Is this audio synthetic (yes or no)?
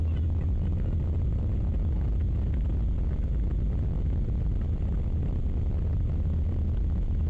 no